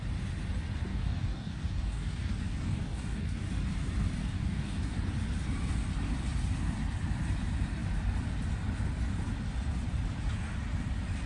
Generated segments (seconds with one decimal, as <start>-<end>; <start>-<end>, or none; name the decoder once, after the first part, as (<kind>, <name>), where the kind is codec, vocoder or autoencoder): 0.9-3.5 (codec, DAC); 4.2-4.9